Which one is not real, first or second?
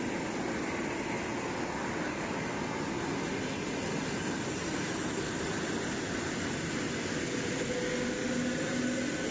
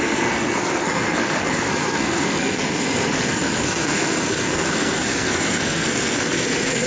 second